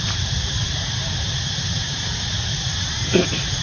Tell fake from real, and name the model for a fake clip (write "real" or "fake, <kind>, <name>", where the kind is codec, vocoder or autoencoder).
fake, vocoder, BigVGAN v2